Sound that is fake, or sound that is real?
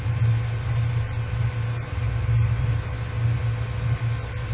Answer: real